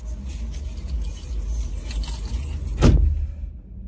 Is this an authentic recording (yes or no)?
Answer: yes